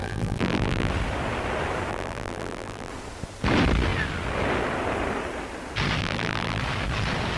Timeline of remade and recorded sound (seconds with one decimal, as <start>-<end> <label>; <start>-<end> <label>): 0.0-0.9 remade; 0.9-1.9 recorded; 1.9-2.9 remade; 2.9-6.0 recorded; 6.0-6.6 remade; 6.6-7.4 recorded